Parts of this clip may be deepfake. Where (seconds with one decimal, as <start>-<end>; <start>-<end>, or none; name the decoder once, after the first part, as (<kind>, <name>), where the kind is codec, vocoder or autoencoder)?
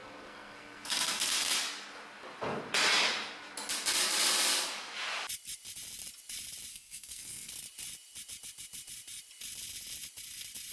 0.0-1.3 (codec, SNAC); 6.7-7.5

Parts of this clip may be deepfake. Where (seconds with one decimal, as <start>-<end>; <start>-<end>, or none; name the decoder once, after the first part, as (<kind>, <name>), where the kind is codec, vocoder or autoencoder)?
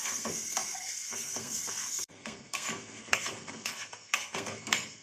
0.0-5.0 (codec, SNAC)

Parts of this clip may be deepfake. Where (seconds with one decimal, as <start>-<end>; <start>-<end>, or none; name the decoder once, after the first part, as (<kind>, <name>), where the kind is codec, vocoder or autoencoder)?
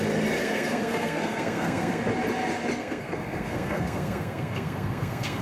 0.4-2.0 (codec, SNAC); 2.8-5.4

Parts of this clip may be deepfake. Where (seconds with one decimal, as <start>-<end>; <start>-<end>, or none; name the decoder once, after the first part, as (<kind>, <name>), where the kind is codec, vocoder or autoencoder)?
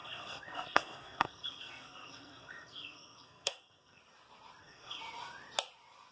0.0-4.0 (codec, SNAC); 4.6-5.0